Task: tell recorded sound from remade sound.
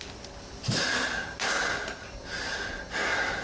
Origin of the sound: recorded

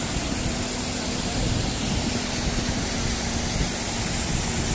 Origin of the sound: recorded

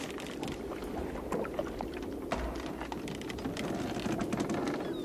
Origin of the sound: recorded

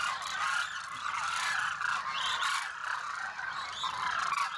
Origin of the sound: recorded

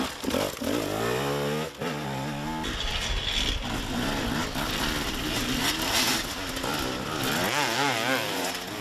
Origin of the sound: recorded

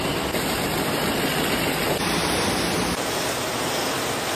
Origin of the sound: recorded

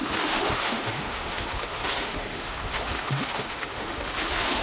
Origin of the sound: remade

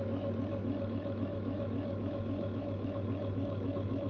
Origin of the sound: remade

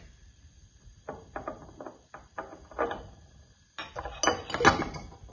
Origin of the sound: recorded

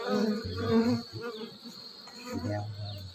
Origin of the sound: recorded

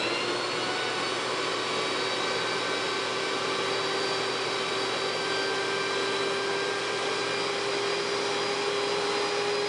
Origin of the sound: recorded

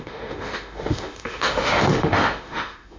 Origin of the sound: remade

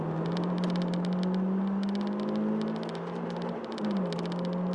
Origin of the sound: recorded